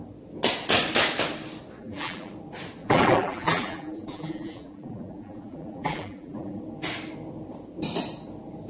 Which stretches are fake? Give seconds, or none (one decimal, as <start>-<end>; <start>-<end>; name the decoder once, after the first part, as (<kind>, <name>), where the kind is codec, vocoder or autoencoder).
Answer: 1.8-2.3 (vocoder, BigVGAN v2); 2.8-6.6